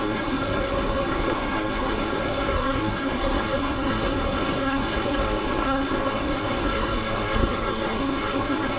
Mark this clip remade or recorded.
remade